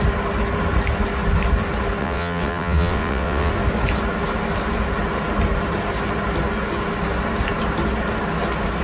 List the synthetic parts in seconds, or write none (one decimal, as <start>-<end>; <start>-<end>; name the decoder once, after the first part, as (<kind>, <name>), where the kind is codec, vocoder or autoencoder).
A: 2.0-3.5 (vocoder, WaveNeXt)